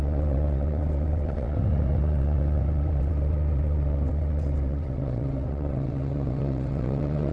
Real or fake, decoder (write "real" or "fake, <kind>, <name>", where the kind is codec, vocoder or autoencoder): fake, vocoder, WaveNeXt